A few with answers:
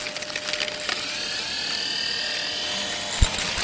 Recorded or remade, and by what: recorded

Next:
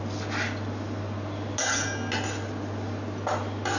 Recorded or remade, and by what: recorded